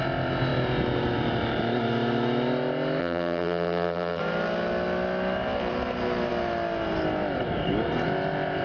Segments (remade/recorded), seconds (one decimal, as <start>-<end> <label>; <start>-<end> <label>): 0.0-3.0 recorded; 3.0-4.2 remade; 4.2-8.6 recorded